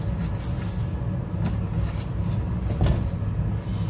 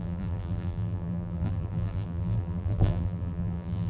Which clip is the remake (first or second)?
second